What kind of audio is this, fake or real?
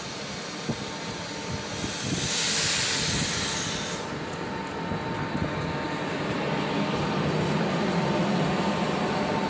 real